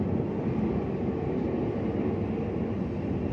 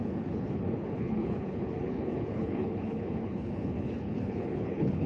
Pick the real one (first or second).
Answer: first